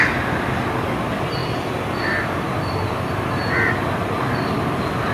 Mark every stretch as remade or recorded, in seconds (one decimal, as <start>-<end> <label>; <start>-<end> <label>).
0.0-1.4 recorded; 1.4-4.5 remade; 4.5-5.1 recorded